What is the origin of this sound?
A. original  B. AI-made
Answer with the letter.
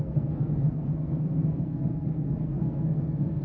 B